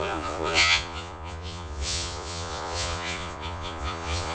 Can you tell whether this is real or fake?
fake